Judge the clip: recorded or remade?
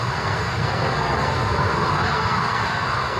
remade